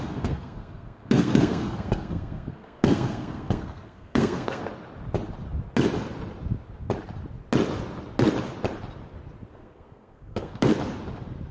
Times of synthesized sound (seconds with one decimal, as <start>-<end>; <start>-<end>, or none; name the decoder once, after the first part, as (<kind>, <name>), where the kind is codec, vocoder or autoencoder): 0.0-4.6 (codec, SNAC); 9.5-10.7